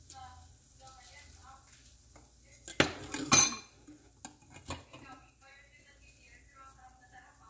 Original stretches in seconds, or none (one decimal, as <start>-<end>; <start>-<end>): 0.0-7.5